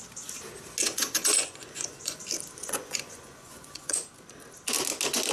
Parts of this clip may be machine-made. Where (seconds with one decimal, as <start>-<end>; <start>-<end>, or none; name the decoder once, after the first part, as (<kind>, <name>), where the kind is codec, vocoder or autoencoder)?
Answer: 0.8-2.2 (vocoder, Vocos); 2.6-4.1